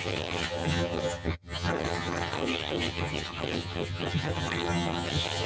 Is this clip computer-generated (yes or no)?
yes